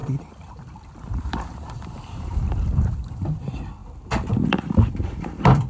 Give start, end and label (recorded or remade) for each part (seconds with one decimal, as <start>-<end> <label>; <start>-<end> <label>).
0.0-3.8 remade; 3.8-5.1 recorded; 5.1-5.7 remade